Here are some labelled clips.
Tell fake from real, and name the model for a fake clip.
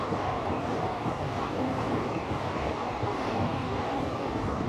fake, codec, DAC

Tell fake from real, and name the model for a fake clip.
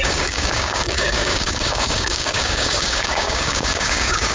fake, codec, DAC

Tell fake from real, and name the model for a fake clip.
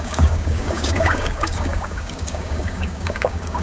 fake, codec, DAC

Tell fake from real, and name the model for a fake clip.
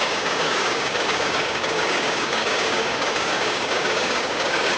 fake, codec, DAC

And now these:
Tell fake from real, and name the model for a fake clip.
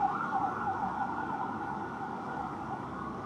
fake, codec, DAC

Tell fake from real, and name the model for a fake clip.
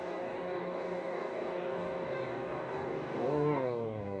fake, codec, DAC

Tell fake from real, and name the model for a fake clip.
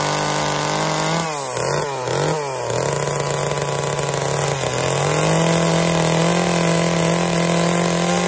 real